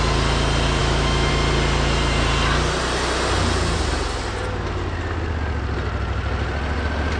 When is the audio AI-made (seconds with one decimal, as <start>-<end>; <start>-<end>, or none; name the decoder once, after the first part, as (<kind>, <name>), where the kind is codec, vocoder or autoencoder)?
0.8-1.3 (autoencoder, DAC-VAE)